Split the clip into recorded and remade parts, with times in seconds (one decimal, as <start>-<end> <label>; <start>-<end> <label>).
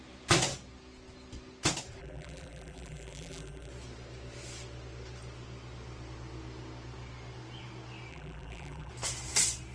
0.0-2.0 recorded; 2.0-3.7 remade; 3.7-8.1 recorded; 8.1-8.9 remade; 8.9-9.7 recorded